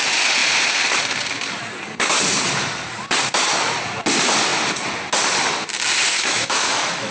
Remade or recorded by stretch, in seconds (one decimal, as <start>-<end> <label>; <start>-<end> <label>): 0.0-6.1 recorded; 6.1-7.1 remade